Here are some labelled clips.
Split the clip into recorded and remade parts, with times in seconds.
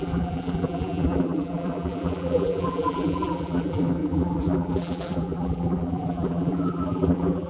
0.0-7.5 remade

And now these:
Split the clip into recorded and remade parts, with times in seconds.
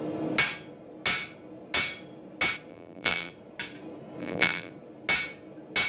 0.0-2.7 recorded; 2.7-3.3 remade; 3.3-4.2 recorded; 4.2-4.7 remade; 4.7-5.9 recorded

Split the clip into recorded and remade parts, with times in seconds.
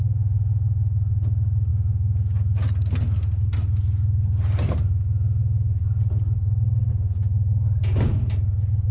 0.0-8.9 recorded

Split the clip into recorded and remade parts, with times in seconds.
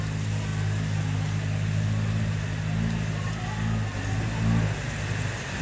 0.0-5.6 recorded